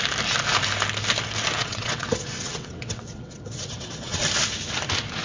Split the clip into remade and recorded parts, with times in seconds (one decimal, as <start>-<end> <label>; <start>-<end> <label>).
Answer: 0.0-1.6 recorded; 1.6-4.2 remade; 4.2-5.2 recorded